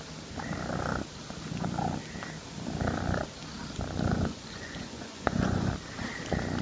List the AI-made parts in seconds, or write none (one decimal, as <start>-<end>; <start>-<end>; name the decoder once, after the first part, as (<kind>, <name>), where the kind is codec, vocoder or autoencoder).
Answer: 4.1-5.7 (vocoder, Vocos)